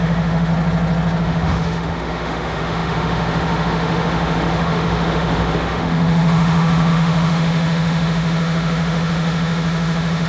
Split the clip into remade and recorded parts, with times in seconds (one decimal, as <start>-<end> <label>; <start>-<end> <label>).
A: 0.0-0.5 remade; 0.5-1.2 recorded; 1.2-10.3 remade